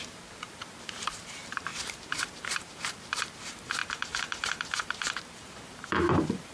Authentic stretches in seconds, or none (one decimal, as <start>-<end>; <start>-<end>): none